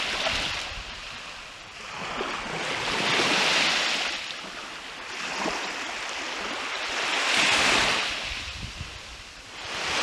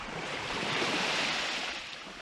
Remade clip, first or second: second